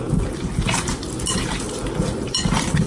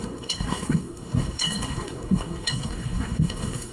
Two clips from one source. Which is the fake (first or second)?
second